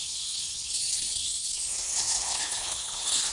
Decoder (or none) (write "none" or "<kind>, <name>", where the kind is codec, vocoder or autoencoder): codec, HILCodec